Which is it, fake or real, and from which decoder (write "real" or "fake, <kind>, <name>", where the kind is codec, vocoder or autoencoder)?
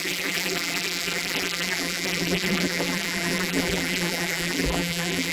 fake, vocoder, BigVGAN v2